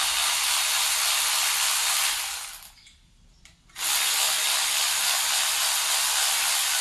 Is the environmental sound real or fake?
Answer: real